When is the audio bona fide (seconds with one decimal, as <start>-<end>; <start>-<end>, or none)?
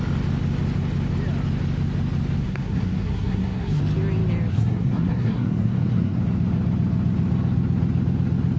0.0-2.4; 3.8-4.5; 6.2-8.6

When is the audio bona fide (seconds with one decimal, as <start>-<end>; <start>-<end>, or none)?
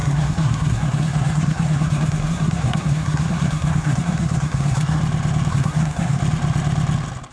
5.0-5.5; 6.2-7.3